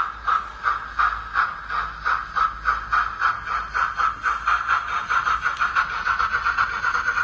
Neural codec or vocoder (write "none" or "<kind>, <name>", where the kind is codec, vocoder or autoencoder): none